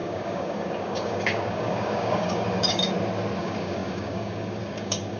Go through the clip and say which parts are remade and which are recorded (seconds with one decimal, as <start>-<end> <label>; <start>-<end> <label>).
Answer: 0.0-2.8 remade; 2.8-3.4 recorded; 3.4-5.2 remade